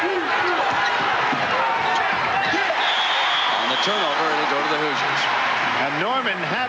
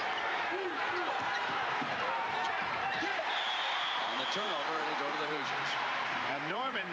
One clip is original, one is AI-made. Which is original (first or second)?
first